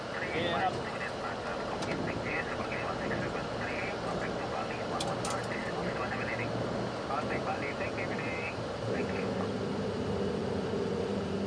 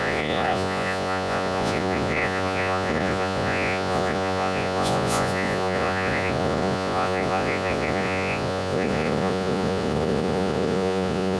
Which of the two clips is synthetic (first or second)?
second